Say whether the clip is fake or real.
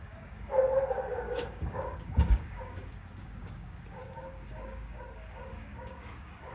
fake